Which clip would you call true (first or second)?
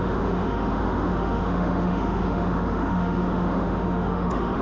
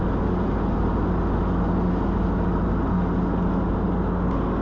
second